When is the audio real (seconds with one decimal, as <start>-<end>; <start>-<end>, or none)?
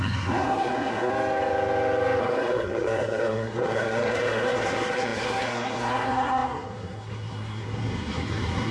1.1-2.2